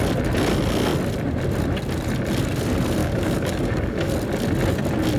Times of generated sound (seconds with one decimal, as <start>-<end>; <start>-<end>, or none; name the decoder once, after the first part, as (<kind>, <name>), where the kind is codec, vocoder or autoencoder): 3.0-4.1 (codec, DAC)